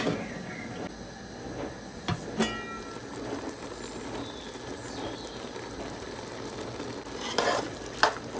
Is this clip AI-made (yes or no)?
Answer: no